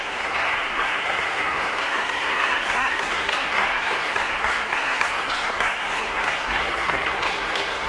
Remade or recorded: remade